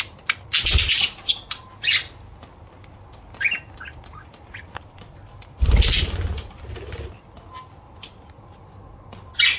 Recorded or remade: recorded